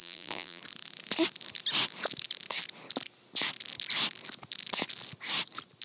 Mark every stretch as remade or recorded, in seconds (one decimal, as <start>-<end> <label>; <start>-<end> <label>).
0.0-0.6 remade; 0.6-5.8 recorded